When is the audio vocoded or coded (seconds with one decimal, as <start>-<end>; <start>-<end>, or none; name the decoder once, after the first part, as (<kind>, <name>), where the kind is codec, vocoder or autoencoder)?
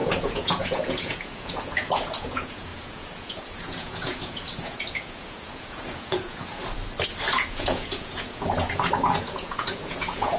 0.0-6.6 (vocoder, Vocos); 7.3-10.4